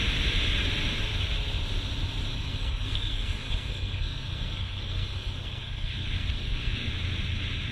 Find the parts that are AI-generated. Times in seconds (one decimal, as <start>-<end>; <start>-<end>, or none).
2.3-6.9